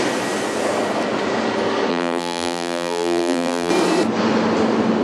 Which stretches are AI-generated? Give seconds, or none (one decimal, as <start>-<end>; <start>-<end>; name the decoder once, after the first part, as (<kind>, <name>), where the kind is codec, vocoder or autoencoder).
1.9-3.7 (vocoder, BigVGAN v2)